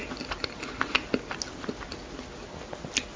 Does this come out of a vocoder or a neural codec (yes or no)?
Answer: no